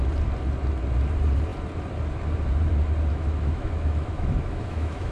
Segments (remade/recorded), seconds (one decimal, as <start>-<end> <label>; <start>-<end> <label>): 0.0-3.1 recorded; 3.1-5.1 remade